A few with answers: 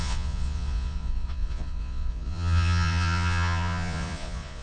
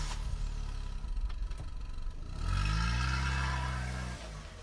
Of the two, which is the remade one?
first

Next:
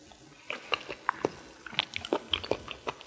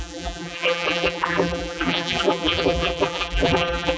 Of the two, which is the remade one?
second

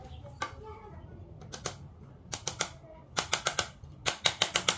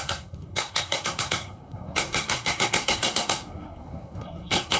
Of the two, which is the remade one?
second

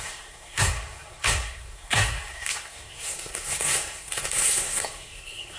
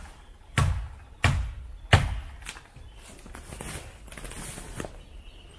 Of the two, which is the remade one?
first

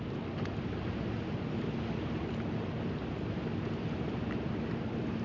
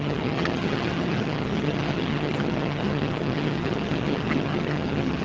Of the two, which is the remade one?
second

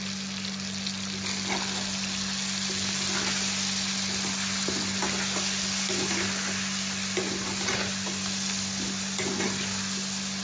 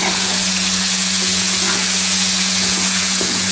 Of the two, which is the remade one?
second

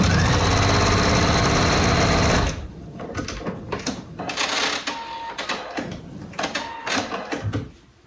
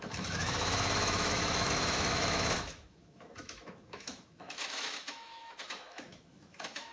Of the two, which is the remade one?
second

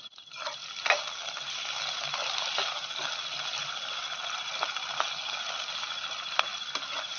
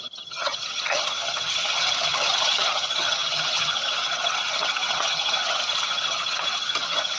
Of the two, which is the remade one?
second